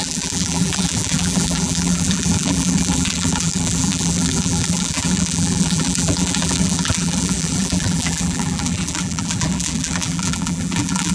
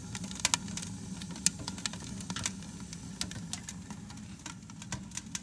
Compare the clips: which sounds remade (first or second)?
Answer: first